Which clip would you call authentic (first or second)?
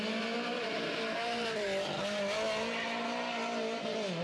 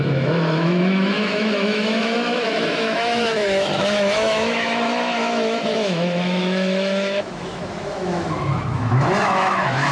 first